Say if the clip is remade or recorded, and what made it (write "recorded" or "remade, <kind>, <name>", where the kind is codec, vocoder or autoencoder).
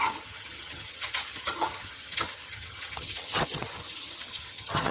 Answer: remade, vocoder, HiFi-GAN